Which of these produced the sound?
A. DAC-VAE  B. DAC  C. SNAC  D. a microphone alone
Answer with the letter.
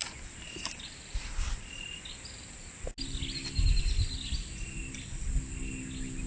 D